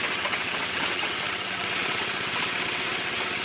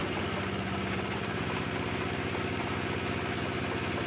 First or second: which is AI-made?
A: first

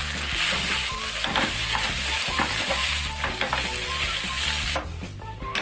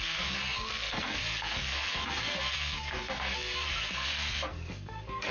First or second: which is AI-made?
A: second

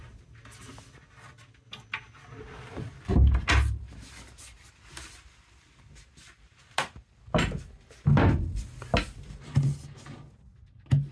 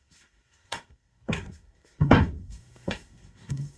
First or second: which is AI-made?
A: second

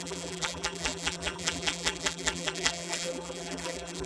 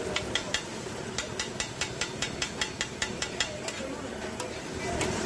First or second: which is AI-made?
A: first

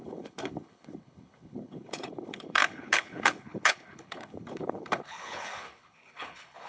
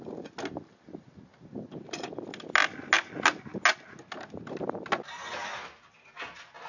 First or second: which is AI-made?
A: first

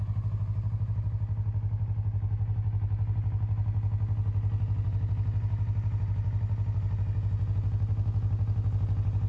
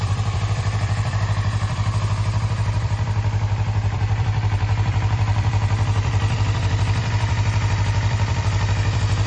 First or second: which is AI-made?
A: second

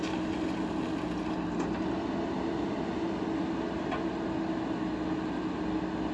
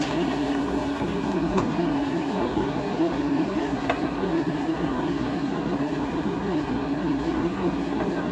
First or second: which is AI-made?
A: second